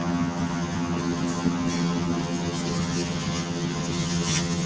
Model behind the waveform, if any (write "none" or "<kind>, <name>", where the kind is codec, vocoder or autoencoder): vocoder, HiFi-GAN